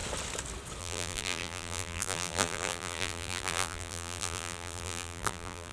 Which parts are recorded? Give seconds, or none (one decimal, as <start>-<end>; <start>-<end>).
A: 0.0-0.8